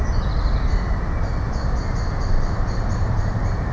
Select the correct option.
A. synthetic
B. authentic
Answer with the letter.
B